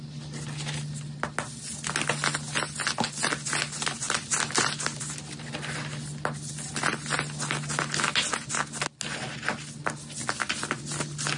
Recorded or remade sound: recorded